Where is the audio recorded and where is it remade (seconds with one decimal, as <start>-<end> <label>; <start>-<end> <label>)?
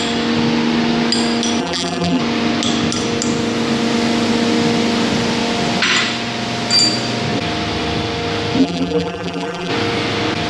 0.0-1.6 recorded; 1.6-2.2 remade; 2.2-8.6 recorded; 8.6-9.7 remade; 9.7-10.5 recorded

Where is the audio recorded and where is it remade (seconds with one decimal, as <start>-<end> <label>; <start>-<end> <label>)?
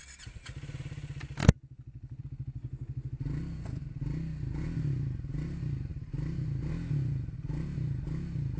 0.0-1.4 recorded; 1.4-2.2 remade; 2.2-8.6 recorded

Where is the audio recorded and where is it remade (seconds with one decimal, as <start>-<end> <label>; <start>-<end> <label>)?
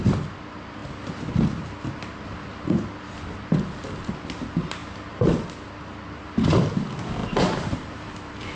0.0-4.8 recorded; 4.8-5.3 remade; 5.3-7.2 recorded; 7.2-8.1 remade; 8.1-8.6 recorded